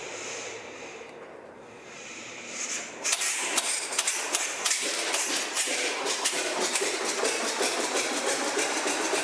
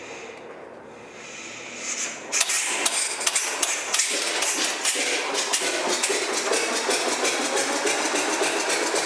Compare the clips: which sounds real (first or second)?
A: second